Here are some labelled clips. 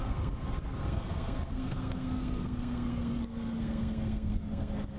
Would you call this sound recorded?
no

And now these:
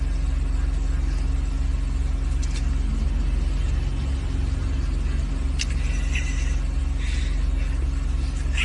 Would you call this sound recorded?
yes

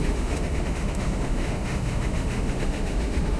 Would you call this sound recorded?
no